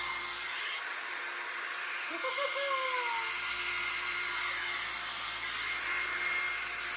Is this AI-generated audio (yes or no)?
no